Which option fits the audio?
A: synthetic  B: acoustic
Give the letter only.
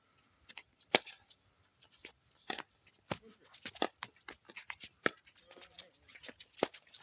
B